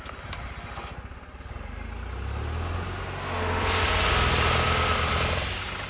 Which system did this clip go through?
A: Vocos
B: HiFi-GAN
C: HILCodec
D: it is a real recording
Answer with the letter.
D